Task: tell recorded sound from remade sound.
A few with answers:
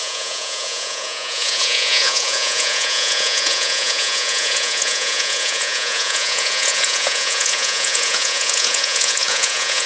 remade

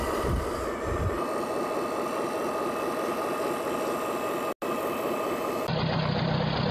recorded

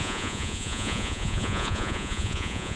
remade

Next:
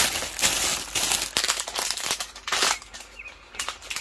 recorded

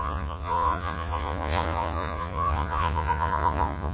remade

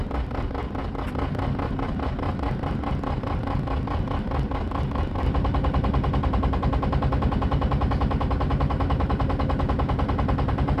recorded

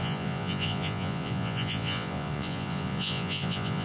remade